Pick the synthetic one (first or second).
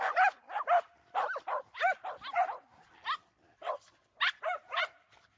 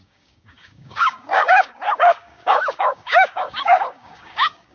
second